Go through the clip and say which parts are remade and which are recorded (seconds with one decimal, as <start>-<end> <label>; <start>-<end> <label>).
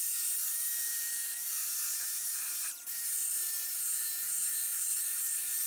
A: 0.0-5.7 remade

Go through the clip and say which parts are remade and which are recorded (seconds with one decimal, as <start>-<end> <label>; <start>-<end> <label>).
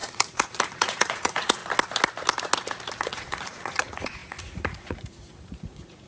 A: 0.0-1.6 remade; 1.6-3.0 recorded; 3.0-6.1 remade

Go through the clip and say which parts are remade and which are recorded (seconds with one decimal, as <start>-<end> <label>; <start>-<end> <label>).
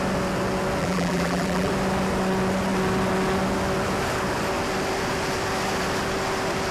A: 0.0-0.8 recorded; 0.8-1.7 remade; 1.7-6.7 recorded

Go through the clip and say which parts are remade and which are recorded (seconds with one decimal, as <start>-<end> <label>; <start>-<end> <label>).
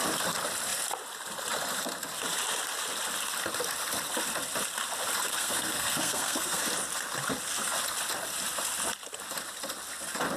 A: 0.0-5.3 recorded; 5.3-6.6 remade; 6.6-10.4 recorded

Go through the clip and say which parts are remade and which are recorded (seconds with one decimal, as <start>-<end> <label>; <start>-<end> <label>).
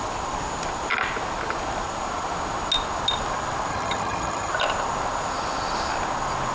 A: 0.0-3.7 recorded; 3.7-4.5 remade; 4.5-6.5 recorded